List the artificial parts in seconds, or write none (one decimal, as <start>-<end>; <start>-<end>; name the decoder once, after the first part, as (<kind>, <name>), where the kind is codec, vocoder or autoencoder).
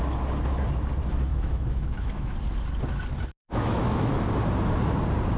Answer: 1.3-2.3 (autoencoder, DAC-VAE); 3.4-4.1